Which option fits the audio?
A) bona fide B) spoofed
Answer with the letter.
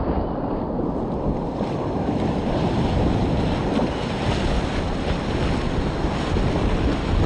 A